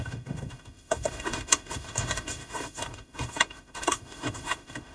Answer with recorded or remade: remade